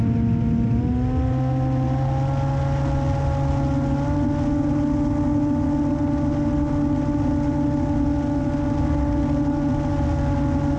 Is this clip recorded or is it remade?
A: recorded